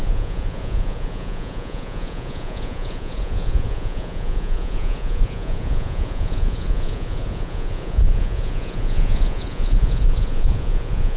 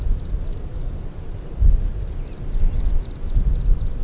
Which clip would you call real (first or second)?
second